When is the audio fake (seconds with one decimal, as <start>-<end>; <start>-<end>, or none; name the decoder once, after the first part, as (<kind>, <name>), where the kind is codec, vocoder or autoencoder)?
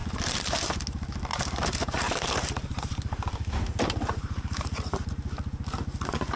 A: 0.0-0.8 (vocoder, BigVGAN v2); 1.3-5.1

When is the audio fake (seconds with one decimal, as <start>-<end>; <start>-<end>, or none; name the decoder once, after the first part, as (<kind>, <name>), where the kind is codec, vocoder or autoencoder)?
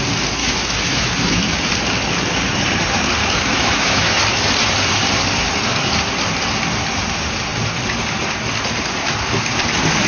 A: 0.4-1.4 (autoencoder, DAC-VAE); 3.2-4.2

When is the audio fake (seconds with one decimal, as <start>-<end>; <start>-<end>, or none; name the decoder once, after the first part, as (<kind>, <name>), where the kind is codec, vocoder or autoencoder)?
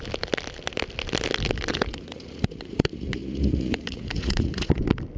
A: 1.7-4.8 (vocoder, Vocos)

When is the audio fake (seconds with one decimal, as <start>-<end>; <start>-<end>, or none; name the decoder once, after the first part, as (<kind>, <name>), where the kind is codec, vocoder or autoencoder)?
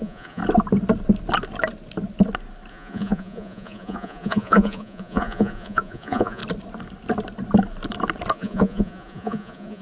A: 0.0-0.4 (vocoder, Vocos); 2.7-6.4; 8.3-9.8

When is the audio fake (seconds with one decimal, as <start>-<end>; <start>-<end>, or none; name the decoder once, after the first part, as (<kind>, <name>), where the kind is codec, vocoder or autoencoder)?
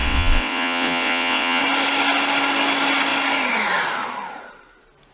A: 0.0-1.6 (vocoder, WaveNeXt)